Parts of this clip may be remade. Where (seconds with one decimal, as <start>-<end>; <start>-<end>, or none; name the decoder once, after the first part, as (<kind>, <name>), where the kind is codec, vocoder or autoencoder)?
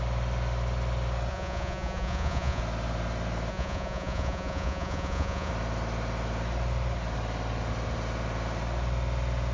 1.3-2.6 (vocoder, Vocos); 3.5-5.5